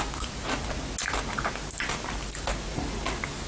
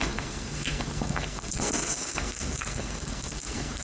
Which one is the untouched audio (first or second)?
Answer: first